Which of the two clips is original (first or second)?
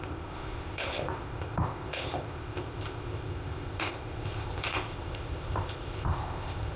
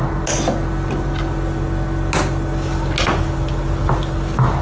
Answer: second